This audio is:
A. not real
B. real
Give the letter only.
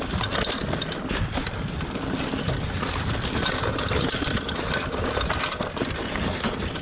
B